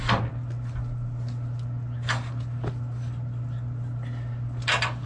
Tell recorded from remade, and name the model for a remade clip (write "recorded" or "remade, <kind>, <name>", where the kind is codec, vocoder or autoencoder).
recorded